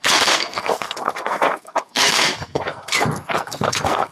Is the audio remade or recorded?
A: remade